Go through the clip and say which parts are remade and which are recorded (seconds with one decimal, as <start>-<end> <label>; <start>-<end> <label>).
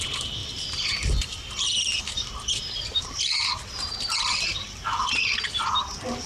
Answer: 0.0-0.4 recorded; 0.4-1.5 remade; 1.5-2.2 recorded; 2.2-5.1 remade; 5.1-6.3 recorded